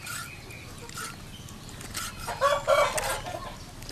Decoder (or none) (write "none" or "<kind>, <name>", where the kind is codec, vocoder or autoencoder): none